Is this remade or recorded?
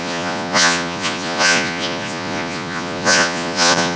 remade